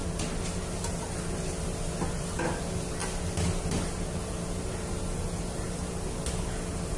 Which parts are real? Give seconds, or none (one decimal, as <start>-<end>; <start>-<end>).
0.0-7.0